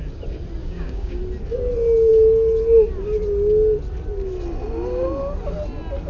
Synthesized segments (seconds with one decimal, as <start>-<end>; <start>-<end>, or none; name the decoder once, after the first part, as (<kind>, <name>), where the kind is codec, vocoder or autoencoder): 0.6-1.2 (codec, DAC)

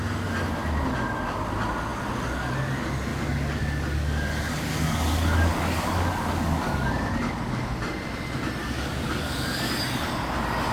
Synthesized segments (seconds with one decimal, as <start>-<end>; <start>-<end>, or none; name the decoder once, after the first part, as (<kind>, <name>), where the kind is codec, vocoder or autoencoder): 3.1-7.6 (codec, DAC); 8.6-9.7

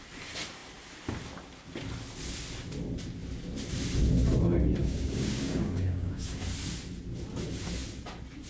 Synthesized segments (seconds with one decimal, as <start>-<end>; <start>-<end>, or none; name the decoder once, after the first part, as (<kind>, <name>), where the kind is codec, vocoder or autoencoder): 4.8-6.4 (codec, DAC)

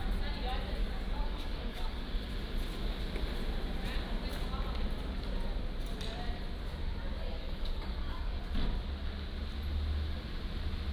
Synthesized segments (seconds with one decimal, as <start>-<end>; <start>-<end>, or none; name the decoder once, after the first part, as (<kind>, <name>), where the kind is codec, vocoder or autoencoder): 0.8-2.0 (codec, DAC); 7.1-8.4

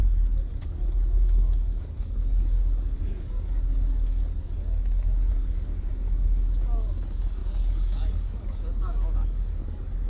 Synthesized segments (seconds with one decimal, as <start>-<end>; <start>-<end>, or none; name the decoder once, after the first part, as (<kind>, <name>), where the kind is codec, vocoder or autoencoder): 0.0-5.7 (codec, DAC); 6.6-10.1

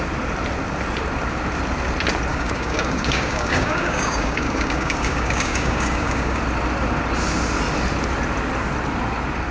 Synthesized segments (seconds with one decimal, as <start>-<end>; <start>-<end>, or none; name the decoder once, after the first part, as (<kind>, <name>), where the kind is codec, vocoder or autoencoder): 2.3-6.4 (codec, DAC)

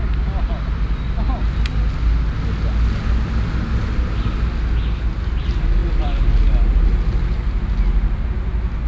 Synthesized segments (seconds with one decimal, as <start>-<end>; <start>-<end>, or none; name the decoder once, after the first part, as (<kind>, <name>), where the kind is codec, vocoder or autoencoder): none

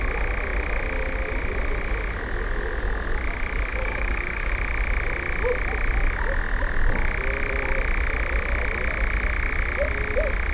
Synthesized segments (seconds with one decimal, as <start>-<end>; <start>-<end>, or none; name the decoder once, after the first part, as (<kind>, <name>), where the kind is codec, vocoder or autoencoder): 3.7-4.5 (codec, DAC)